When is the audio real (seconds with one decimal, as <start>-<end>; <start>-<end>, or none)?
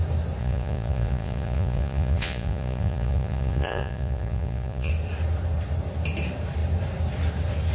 0.0-0.4; 4.9-7.7